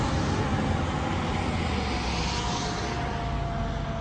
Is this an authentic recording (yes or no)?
yes